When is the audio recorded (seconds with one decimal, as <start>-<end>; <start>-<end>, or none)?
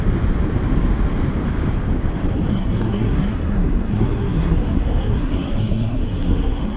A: 0.0-2.5